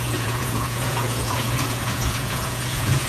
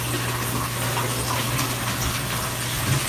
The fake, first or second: first